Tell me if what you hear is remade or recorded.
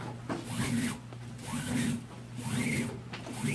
recorded